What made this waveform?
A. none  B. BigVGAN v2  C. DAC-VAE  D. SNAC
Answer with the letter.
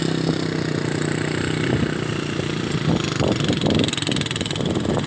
A